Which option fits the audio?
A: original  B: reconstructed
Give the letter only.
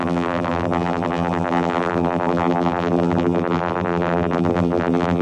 B